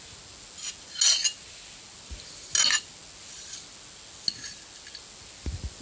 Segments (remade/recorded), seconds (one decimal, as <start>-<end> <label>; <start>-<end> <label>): 0.0-5.8 recorded